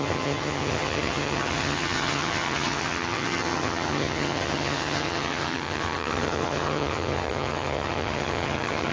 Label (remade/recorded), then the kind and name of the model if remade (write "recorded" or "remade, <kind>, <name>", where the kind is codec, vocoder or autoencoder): remade, vocoder, HiFi-GAN